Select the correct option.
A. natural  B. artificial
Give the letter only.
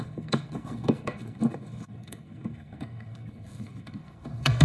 B